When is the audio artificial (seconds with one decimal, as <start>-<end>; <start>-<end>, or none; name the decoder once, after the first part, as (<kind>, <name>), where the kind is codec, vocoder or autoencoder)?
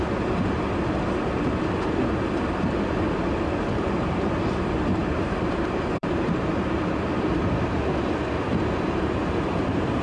5.0-7.4 (vocoder, BigVGAN v2)